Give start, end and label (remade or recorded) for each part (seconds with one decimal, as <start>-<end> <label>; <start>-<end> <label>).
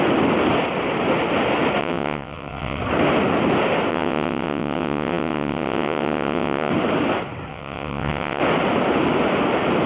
0.0-1.8 recorded; 1.8-2.8 remade; 2.8-3.9 recorded; 3.9-6.7 remade; 6.7-7.5 recorded; 7.5-8.4 remade; 8.4-9.9 recorded